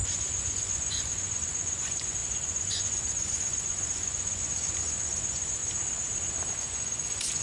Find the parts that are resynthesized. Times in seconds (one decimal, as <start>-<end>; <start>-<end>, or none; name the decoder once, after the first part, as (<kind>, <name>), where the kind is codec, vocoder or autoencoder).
0.0-5.6 (vocoder, Vocos); 6.5-7.4